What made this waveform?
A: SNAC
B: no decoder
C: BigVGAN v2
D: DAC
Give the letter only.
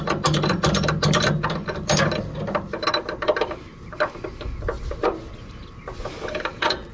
B